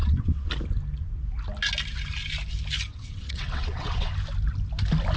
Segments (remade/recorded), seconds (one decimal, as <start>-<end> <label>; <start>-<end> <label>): 0.0-0.5 remade; 0.5-2.9 recorded; 2.9-4.1 remade; 4.1-5.2 recorded